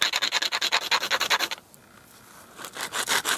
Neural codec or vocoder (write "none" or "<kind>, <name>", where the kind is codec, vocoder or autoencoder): none